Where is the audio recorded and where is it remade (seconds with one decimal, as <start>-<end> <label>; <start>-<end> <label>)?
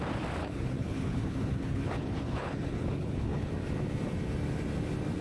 0.0-0.4 recorded; 0.4-3.5 remade; 3.5-5.2 recorded